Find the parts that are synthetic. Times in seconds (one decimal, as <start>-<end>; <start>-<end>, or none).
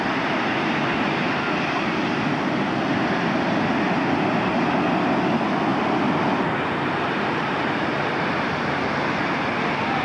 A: 5.7-8.7